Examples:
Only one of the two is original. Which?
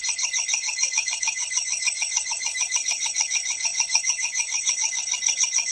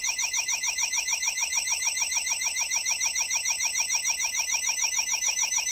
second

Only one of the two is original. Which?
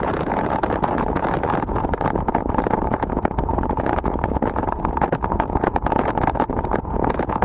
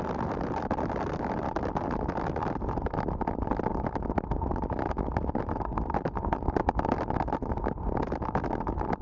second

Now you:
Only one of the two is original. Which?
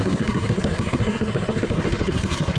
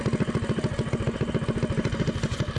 second